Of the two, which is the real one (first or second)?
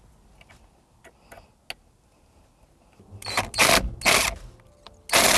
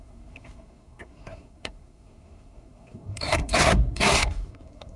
first